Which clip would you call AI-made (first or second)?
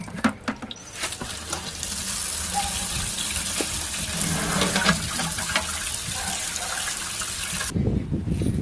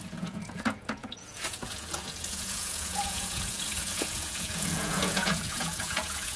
second